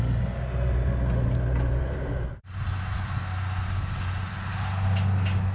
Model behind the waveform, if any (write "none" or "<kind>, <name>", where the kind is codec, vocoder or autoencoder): none